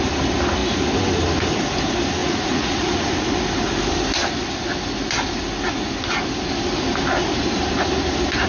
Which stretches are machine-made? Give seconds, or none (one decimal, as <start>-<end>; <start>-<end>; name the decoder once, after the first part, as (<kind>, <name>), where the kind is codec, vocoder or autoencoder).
2.2-3.1 (vocoder, Vocos)